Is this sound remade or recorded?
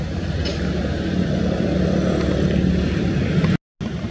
recorded